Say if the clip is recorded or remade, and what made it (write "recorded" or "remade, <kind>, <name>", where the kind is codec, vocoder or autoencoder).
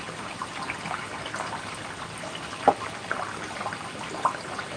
recorded